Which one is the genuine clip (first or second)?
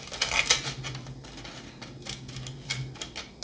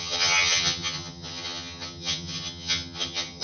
first